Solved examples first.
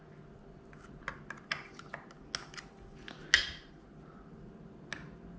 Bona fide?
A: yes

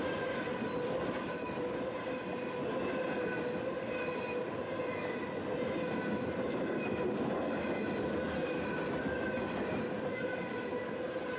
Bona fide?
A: yes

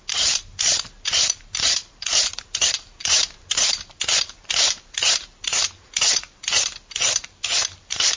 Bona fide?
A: no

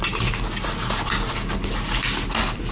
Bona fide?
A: yes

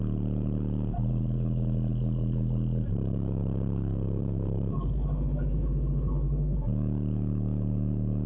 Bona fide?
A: yes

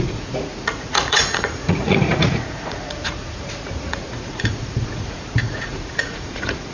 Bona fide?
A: no